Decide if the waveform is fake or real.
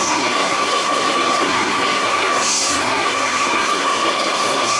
fake